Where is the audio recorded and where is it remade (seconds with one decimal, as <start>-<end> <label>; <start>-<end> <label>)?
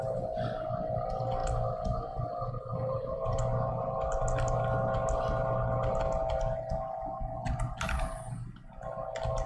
0.0-2.7 recorded; 2.7-3.4 remade; 3.4-9.5 recorded